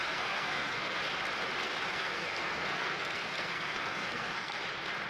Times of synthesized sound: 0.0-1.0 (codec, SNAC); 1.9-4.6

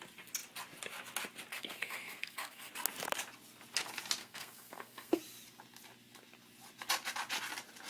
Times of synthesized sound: 1.5-2.7 (codec, SNAC); 4.2-5.2

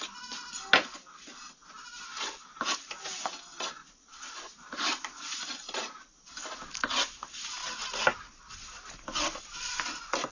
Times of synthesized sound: 3.8-6.0 (vocoder, BigVGAN v2)

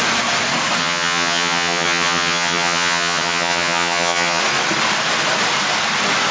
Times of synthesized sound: 0.8-4.4 (vocoder, HiFi-GAN)